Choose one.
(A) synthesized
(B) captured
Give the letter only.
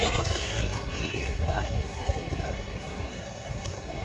A